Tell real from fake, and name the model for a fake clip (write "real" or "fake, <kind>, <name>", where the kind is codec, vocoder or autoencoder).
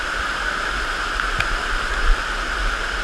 real